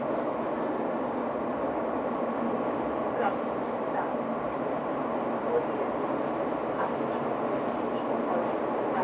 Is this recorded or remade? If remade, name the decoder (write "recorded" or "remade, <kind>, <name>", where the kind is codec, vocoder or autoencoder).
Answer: recorded